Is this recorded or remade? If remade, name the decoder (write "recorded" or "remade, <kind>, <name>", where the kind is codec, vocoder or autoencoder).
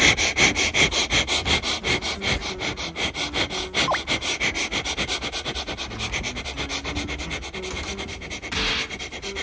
recorded